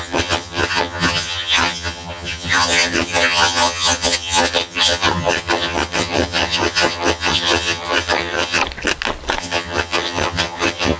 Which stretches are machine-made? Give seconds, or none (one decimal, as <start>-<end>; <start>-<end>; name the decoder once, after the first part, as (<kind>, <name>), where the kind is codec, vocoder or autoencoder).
0.0-8.6 (vocoder, HiFi-GAN); 9.4-11.0